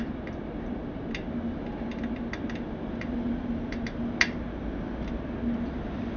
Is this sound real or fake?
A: real